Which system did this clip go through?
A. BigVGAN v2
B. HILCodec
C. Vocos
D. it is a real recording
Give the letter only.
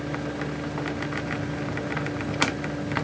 D